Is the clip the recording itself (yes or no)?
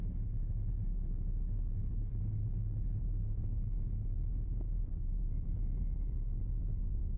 yes